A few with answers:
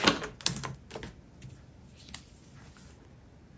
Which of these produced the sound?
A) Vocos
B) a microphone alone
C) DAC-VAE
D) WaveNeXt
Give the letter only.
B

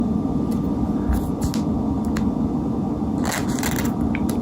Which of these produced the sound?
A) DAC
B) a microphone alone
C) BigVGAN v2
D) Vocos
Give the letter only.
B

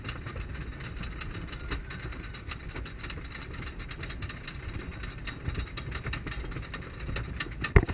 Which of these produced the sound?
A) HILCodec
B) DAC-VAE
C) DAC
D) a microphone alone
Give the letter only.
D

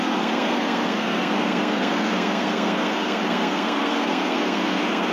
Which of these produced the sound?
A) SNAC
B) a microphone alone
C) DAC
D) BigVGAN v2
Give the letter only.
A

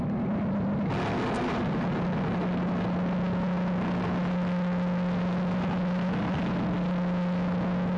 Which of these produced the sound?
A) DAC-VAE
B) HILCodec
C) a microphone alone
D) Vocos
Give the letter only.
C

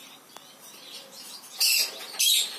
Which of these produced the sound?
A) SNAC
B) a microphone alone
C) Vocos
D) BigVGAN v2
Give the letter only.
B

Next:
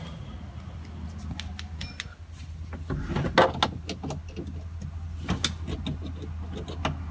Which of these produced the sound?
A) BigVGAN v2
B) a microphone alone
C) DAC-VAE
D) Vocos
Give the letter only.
B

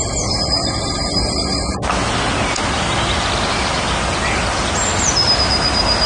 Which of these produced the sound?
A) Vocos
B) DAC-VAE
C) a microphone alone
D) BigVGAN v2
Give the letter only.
C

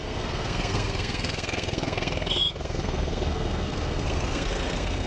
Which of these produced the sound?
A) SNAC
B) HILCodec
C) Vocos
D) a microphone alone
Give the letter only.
A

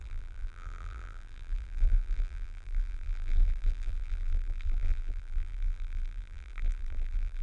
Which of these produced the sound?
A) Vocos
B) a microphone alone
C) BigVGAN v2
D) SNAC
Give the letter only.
C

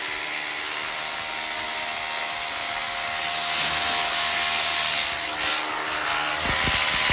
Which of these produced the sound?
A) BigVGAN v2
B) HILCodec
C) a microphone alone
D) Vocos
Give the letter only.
C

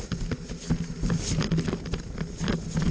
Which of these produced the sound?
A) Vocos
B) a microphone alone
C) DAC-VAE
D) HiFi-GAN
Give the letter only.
B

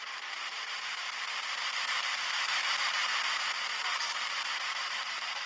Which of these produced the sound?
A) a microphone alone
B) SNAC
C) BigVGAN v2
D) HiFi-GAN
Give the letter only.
C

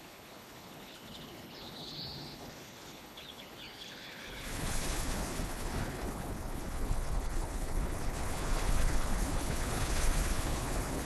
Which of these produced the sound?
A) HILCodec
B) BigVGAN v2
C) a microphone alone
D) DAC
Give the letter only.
A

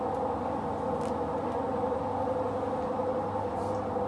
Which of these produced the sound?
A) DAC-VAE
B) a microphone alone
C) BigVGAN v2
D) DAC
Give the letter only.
B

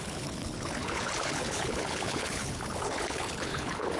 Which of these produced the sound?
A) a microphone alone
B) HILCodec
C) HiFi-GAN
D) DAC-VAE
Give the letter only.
B